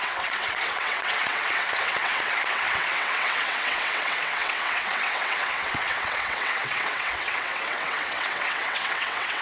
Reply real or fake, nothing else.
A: fake